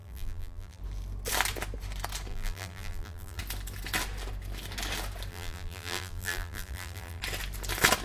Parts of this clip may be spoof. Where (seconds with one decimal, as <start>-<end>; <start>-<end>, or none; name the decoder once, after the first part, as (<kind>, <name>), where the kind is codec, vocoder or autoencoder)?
0.0-0.8 (vocoder, BigVGAN v2); 2.3-3.4; 5.3-7.2